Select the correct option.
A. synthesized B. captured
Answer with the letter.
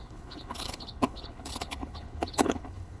A